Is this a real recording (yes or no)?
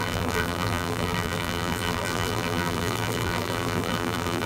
no